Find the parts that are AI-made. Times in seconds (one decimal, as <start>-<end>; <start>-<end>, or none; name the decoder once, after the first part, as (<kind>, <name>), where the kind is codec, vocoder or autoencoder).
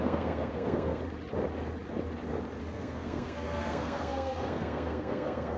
0.0-1.0 (codec, SNAC); 2.6-5.6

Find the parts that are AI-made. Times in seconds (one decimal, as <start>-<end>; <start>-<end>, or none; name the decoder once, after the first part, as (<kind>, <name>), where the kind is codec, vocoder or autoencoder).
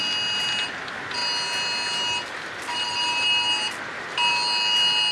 none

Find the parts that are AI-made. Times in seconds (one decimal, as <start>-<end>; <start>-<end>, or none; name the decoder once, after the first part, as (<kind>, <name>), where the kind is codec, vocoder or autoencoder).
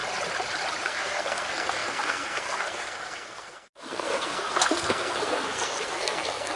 0.8-6.6 (codec, SNAC)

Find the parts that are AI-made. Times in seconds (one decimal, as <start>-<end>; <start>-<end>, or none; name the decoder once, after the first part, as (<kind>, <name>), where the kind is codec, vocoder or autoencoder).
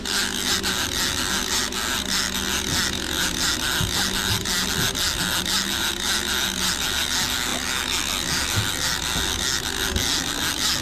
none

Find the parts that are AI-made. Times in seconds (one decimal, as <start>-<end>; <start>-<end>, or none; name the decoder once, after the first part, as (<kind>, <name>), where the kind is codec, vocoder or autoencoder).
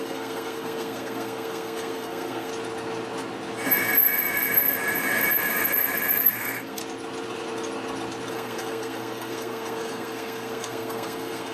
0.0-2.5 (codec, SNAC); 6.2-6.8; 8.3-11.5